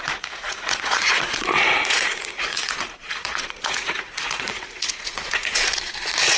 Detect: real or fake fake